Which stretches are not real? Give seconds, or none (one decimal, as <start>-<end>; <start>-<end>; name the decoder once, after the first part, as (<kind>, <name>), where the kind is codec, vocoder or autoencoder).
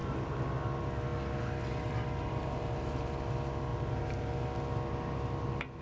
0.0-0.5 (vocoder, BigVGAN v2); 2.2-3.1; 3.7-4.3